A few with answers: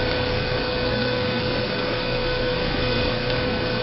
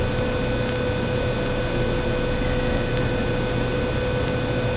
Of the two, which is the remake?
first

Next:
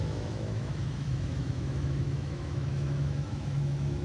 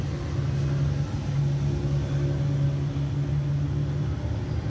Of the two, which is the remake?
first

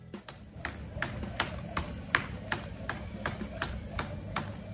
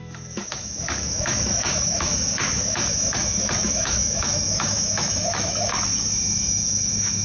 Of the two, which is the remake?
second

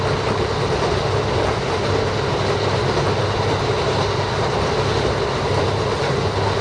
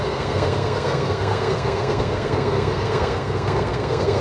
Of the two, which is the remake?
second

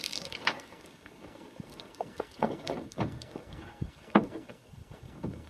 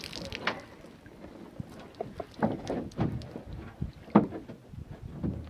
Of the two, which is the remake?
first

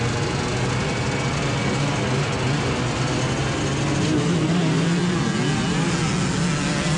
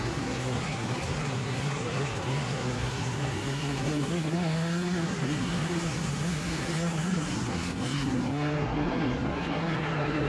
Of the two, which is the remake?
second